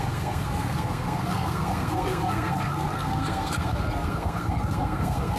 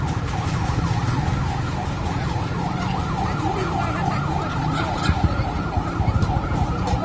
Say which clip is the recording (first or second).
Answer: second